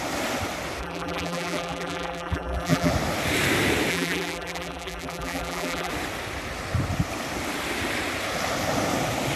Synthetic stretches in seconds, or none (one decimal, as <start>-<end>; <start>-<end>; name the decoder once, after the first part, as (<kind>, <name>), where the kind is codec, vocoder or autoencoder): 0.8-2.9 (vocoder, BigVGAN v2); 3.9-5.9